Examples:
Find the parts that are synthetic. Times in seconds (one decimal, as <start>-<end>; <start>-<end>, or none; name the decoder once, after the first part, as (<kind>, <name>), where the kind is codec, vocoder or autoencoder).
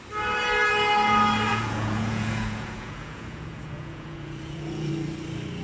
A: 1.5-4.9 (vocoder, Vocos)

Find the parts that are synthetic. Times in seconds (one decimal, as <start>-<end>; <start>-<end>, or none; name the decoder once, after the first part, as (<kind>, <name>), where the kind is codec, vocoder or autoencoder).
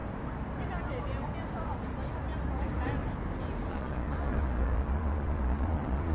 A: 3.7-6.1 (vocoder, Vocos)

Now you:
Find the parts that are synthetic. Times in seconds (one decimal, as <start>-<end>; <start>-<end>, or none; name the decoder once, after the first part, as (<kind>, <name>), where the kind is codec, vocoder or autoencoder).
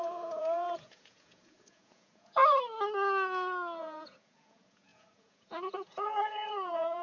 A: 0.0-2.4 (vocoder, Vocos); 3.8-7.0